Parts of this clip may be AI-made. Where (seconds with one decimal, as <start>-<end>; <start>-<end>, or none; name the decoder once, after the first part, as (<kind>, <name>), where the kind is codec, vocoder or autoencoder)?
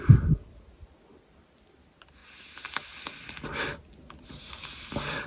none